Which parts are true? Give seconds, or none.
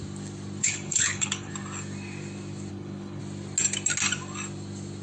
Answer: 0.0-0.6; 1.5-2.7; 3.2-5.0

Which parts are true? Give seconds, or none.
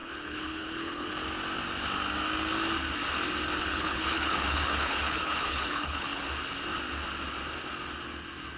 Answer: 1.1-3.7; 6.2-8.6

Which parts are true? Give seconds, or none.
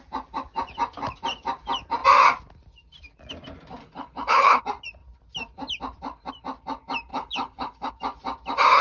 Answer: 0.0-3.8; 4.6-7.1; 7.9-8.8